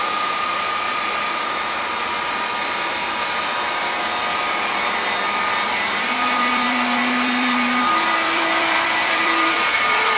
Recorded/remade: remade